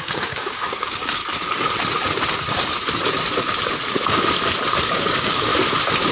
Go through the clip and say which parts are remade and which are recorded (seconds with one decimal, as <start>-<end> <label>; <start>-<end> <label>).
0.0-1.2 remade; 1.2-4.9 recorded; 4.9-5.5 remade; 5.5-6.1 recorded